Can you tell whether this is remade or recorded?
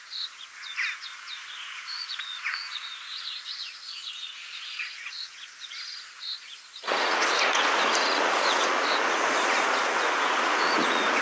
remade